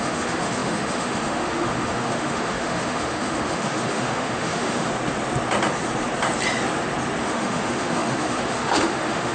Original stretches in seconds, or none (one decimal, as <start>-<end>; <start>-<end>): 4.9-7.2